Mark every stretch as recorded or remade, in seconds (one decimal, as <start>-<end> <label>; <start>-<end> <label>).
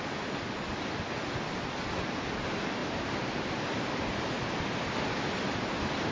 0.0-6.1 recorded